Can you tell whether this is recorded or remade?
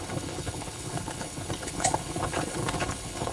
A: remade